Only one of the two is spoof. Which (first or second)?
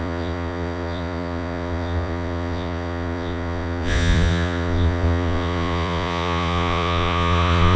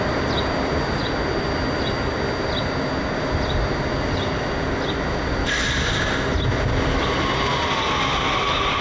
first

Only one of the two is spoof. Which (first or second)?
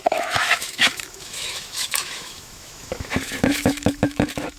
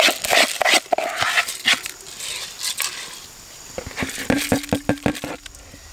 first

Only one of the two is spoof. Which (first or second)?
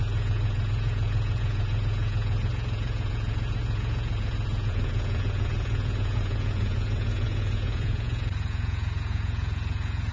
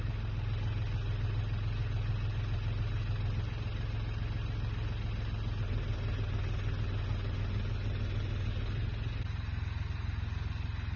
first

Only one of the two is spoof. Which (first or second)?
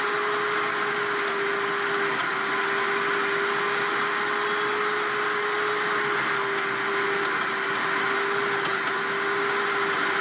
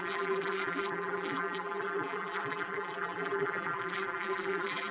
second